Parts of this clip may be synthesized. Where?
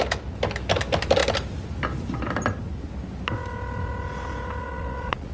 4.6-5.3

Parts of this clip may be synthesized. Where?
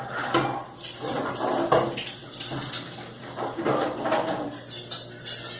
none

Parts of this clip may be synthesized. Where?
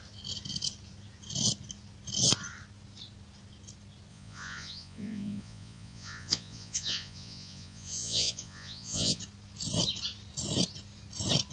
4.1-9.2